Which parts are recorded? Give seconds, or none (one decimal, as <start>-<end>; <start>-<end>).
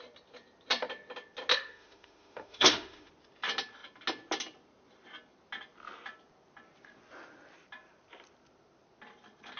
0.0-1.5; 3.1-9.6